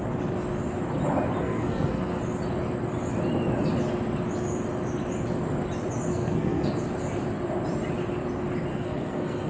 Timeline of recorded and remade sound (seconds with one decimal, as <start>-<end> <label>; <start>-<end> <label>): 0.0-1.4 recorded; 1.4-2.2 remade; 2.2-6.1 recorded; 6.1-6.7 remade; 6.7-8.7 recorded; 8.7-9.5 remade